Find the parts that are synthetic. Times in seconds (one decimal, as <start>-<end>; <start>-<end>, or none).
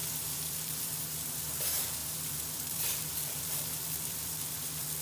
0.0-5.0